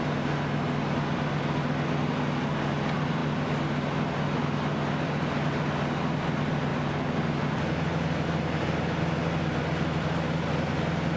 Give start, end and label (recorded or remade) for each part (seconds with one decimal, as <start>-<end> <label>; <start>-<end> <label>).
0.0-11.2 recorded